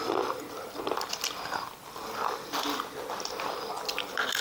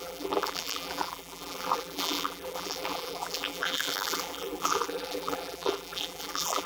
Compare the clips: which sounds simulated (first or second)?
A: second